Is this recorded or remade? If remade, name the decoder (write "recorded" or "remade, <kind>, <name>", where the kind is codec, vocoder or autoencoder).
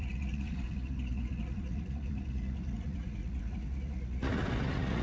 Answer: remade, vocoder, Vocos